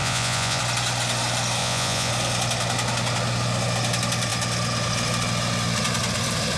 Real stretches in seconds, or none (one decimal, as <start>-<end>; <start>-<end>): 0.6-1.6; 2.1-6.6